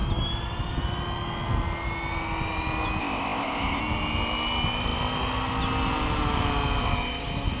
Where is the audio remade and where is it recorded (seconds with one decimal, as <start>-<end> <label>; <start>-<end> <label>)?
0.0-3.0 recorded; 3.0-3.8 remade; 3.8-7.6 recorded